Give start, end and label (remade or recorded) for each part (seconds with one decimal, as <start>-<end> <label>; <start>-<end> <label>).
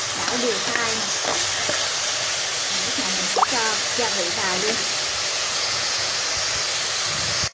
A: 0.0-2.5 recorded; 2.5-3.0 remade; 3.0-5.3 recorded; 5.3-6.2 remade; 6.2-7.5 recorded